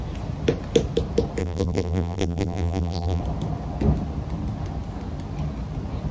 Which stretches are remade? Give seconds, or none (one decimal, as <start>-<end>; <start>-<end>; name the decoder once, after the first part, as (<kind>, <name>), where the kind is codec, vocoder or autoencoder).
1.4-3.2 (vocoder, BigVGAN v2)